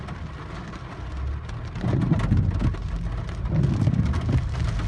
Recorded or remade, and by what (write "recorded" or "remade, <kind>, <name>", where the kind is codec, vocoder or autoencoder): recorded